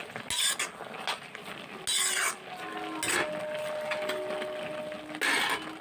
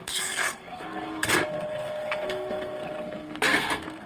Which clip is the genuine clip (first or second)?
first